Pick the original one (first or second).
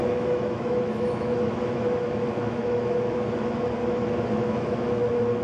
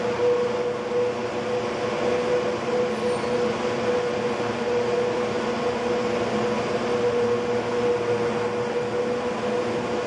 second